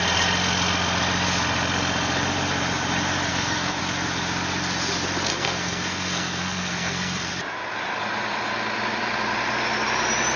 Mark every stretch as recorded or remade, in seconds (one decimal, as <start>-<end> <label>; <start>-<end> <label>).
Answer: 0.0-3.3 recorded; 3.3-3.8 remade; 3.8-5.3 recorded; 5.3-7.3 remade; 7.3-10.4 recorded